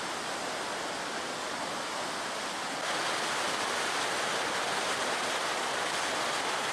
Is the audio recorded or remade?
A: recorded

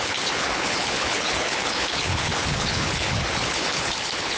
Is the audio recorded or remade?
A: remade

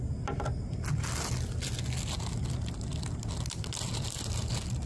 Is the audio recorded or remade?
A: recorded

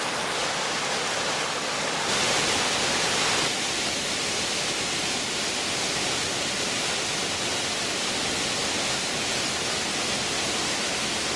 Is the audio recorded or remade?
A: recorded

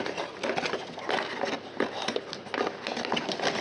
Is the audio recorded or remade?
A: recorded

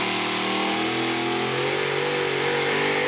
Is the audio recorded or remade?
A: recorded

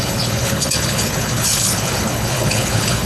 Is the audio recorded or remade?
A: remade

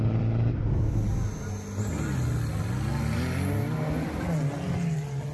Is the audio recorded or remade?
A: recorded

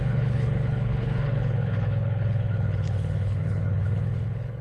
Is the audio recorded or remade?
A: remade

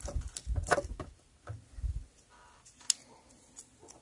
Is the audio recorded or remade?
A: recorded